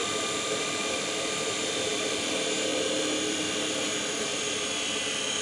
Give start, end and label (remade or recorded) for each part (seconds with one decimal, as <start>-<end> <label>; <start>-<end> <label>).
0.0-2.3 remade; 2.3-2.7 recorded; 2.7-4.7 remade; 4.7-5.4 recorded